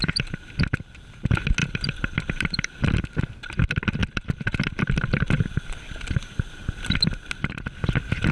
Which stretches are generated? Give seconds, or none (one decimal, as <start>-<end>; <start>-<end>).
1.6-3.0